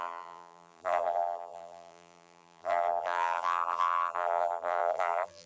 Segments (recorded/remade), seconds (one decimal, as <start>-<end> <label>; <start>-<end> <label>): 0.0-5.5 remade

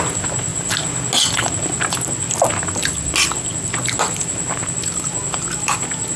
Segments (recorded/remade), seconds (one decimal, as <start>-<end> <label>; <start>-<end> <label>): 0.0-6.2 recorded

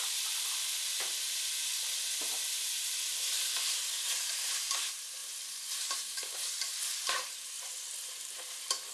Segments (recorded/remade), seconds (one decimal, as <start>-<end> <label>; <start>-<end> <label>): 0.0-8.9 remade